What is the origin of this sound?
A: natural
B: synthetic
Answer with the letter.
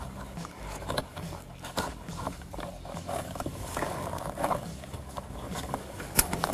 B